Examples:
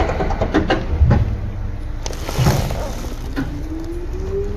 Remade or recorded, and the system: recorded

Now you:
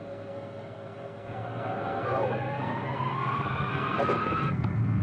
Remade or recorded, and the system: remade, codec, SNAC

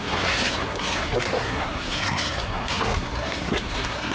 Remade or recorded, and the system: remade, codec, SNAC